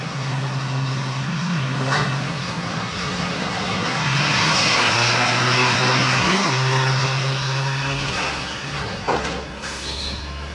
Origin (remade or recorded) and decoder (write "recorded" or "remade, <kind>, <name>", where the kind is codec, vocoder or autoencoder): remade, codec, SNAC